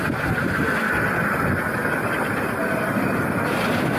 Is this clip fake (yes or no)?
no